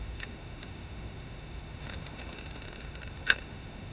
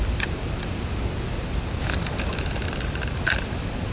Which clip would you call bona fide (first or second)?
second